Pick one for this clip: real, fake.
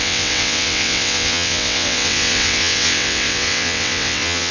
fake